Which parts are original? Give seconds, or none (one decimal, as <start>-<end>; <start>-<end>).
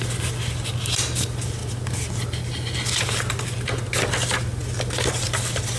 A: 0.0-5.8